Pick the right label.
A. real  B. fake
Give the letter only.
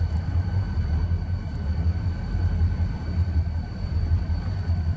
B